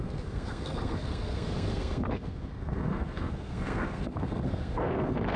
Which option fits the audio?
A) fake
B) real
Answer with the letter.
A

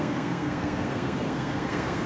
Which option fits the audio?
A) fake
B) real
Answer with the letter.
A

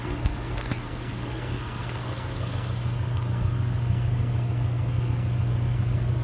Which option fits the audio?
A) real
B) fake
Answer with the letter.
B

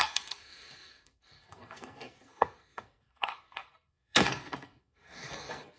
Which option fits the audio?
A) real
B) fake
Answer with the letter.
B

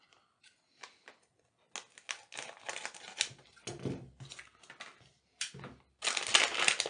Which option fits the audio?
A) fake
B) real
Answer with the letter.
B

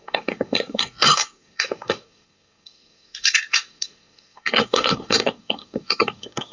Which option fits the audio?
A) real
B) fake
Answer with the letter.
B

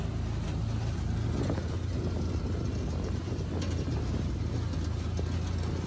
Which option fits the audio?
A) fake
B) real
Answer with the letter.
B